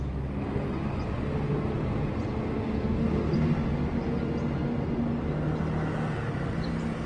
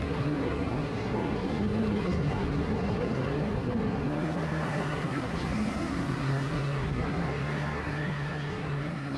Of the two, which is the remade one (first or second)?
second